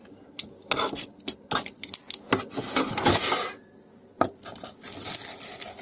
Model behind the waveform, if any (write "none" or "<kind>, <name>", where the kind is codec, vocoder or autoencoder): none